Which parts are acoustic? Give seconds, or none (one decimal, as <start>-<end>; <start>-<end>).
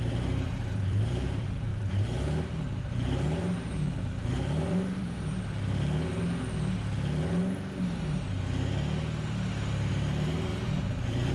6.1-9.9